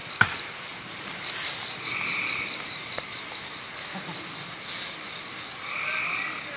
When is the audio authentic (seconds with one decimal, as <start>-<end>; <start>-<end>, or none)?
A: 4.0-6.6